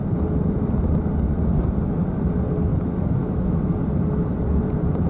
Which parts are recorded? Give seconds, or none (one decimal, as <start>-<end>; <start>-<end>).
0.0-2.7; 3.8-5.1